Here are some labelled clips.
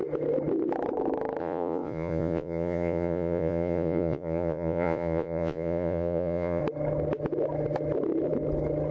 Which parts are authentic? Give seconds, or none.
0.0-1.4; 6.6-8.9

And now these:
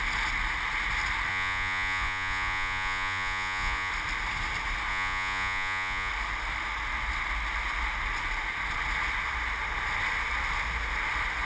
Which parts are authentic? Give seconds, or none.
0.0-1.3; 3.9-4.9; 6.1-11.5

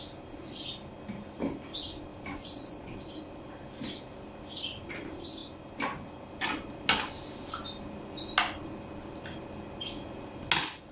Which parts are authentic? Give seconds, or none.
0.0-2.1; 3.0-10.9

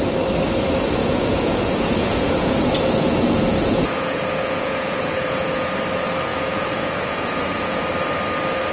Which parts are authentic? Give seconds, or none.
0.0-1.0; 5.7-6.3; 7.9-8.7

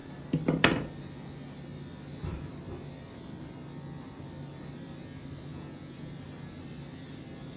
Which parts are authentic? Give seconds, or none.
0.0-5.5; 6.1-7.6